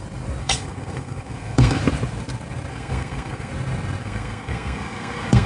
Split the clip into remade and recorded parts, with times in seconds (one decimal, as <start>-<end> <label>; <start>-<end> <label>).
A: 0.0-0.4 recorded; 0.4-1.8 remade; 1.8-2.7 recorded; 2.7-3.5 remade; 3.5-4.0 recorded; 4.0-5.5 remade